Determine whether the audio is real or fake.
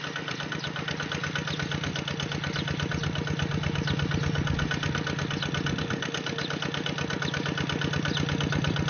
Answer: real